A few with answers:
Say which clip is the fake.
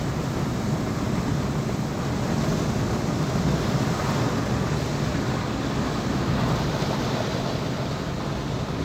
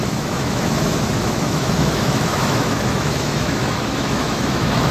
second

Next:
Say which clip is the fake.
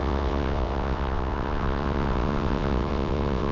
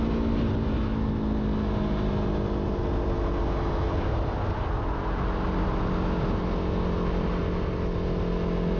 first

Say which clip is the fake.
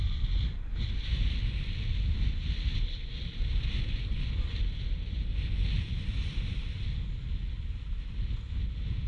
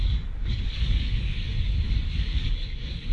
second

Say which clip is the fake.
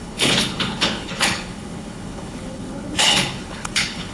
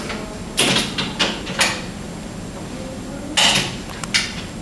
first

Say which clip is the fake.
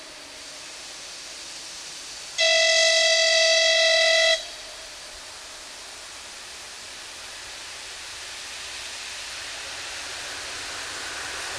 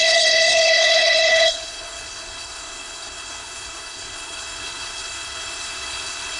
second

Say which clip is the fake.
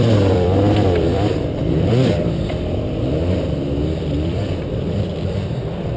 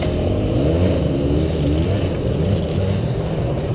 first